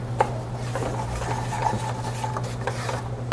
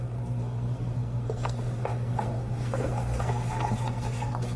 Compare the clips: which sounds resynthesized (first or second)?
second